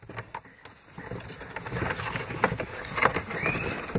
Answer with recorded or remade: recorded